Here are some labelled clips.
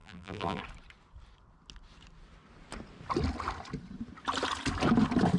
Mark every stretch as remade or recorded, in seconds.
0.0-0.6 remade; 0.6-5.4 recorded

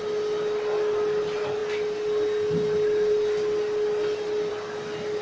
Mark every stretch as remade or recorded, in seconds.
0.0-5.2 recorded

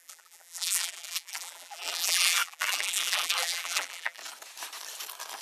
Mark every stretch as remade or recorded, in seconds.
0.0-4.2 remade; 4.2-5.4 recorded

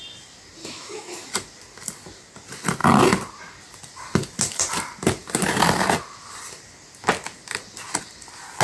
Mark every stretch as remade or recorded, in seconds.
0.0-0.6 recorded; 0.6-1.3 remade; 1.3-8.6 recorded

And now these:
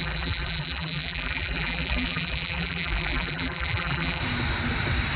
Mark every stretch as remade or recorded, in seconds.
0.0-4.2 remade; 4.2-5.2 recorded

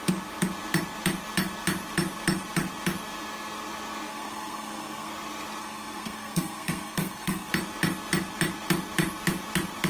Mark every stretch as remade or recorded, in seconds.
0.0-4.1 recorded; 4.1-5.1 remade; 5.1-5.6 recorded; 5.6-7.5 remade; 7.5-9.9 recorded